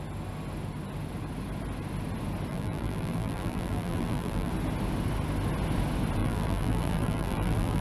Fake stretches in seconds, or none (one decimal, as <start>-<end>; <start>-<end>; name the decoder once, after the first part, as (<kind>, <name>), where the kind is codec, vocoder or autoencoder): 2.5-4.5 (vocoder, BigVGAN v2); 6.2-7.8